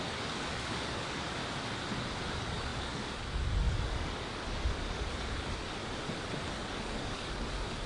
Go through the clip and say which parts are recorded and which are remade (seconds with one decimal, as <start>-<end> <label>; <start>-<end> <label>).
0.0-1.4 remade; 1.4-2.3 recorded; 2.3-5.8 remade; 5.8-6.5 recorded; 6.5-7.9 remade